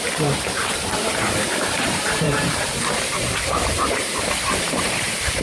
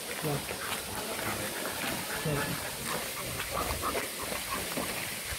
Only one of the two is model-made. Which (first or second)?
first